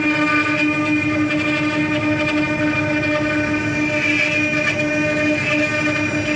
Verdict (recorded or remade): recorded